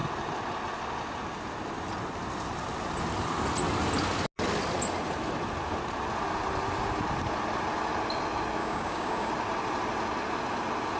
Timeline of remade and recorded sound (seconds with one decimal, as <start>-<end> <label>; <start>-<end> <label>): 0.0-8.6 recorded; 8.6-9.3 remade; 9.3-11.0 recorded